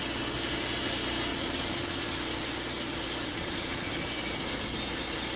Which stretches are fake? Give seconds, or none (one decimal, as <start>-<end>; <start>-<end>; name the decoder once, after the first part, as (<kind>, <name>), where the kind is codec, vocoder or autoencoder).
1.3-2.1 (vocoder, Vocos); 3.3-3.9